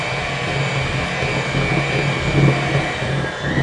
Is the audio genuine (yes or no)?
yes